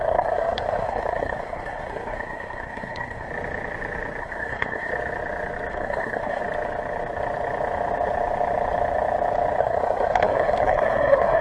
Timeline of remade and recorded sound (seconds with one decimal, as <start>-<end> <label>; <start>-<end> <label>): 0.0-3.3 remade; 3.3-4.2 recorded; 4.2-4.9 remade; 4.9-5.7 recorded; 5.7-6.4 remade; 6.4-9.6 recorded; 9.6-11.4 remade